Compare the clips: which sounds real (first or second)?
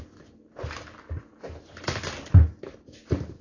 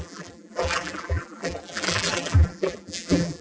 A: first